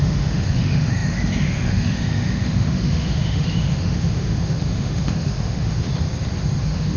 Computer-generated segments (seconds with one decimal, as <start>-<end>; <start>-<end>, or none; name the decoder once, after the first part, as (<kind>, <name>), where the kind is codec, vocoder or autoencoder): 0.0-5.9 (autoencoder, DAC-VAE); 6.6-7.0